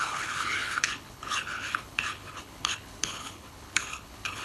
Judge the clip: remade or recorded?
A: remade